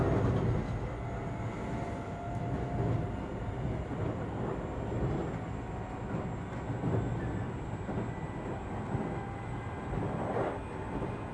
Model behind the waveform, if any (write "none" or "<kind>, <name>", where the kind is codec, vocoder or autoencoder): none